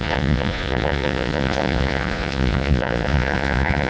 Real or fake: fake